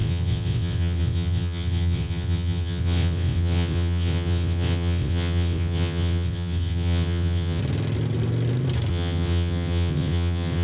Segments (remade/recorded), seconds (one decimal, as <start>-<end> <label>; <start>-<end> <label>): 0.0-7.6 remade; 7.6-8.9 recorded; 8.9-10.6 remade